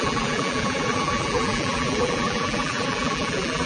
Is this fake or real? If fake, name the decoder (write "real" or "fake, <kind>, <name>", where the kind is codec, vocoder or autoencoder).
fake, vocoder, BigVGAN v2